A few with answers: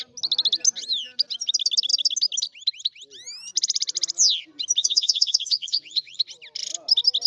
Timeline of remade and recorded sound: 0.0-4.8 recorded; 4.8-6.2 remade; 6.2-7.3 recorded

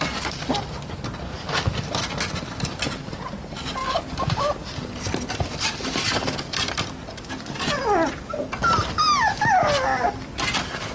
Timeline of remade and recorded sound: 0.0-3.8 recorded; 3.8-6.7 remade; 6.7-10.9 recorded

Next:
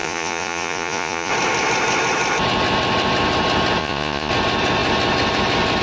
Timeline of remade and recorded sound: 0.0-1.3 remade; 1.3-3.8 recorded; 3.8-4.3 remade; 4.3-5.8 recorded

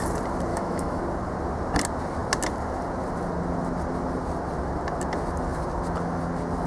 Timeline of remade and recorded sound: 0.0-0.5 recorded; 0.5-1.0 remade; 1.0-6.7 recorded

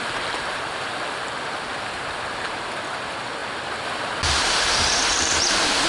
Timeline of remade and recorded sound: 0.0-0.9 remade; 0.9-2.3 recorded; 2.3-3.4 remade; 3.4-3.9 recorded; 3.9-5.9 remade

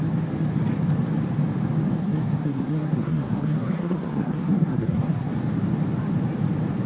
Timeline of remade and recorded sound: 0.0-2.0 recorded; 2.0-5.3 remade; 5.3-6.9 recorded

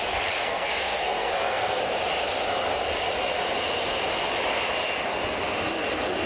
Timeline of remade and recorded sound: 0.0-0.4 recorded; 0.4-1.8 remade; 1.8-6.3 recorded

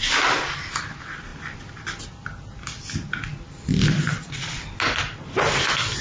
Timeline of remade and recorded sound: 0.0-6.0 recorded